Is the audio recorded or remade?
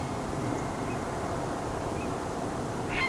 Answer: remade